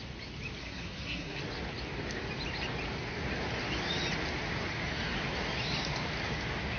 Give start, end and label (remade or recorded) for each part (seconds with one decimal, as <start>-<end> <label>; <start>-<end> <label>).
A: 0.0-0.6 recorded; 0.6-1.4 remade; 1.4-6.8 recorded